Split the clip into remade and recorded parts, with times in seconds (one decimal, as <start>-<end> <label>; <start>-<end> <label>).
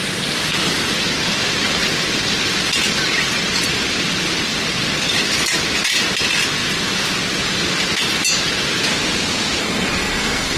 0.0-9.6 recorded; 9.6-10.6 remade